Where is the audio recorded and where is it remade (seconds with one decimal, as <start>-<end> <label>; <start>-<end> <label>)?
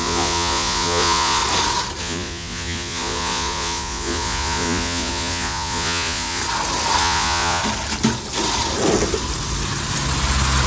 0.0-1.4 remade; 1.4-2.0 recorded; 2.0-6.4 remade; 6.4-7.0 recorded; 7.0-7.6 remade; 7.6-10.7 recorded